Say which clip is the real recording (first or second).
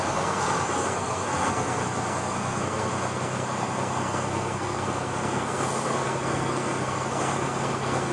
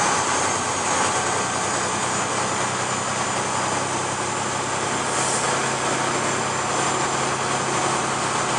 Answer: second